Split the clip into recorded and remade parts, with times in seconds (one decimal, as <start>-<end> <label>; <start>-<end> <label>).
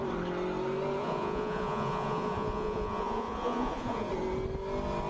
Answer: 0.0-1.0 recorded; 1.0-4.1 remade; 4.1-5.1 recorded